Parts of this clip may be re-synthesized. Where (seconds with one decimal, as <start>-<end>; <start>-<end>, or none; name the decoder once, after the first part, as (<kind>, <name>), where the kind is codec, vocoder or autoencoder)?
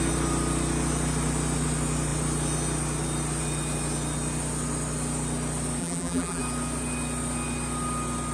5.8-6.4 (vocoder, BigVGAN v2)